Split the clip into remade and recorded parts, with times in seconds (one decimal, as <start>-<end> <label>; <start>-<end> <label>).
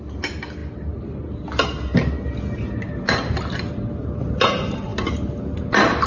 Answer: 0.0-6.1 recorded